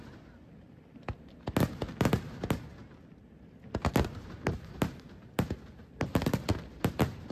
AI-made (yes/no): no